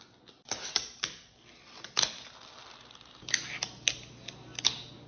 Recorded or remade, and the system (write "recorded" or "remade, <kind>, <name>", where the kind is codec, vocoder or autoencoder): recorded